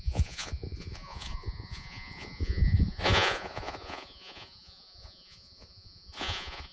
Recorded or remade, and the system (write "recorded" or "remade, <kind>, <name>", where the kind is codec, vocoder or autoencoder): remade, vocoder, Vocos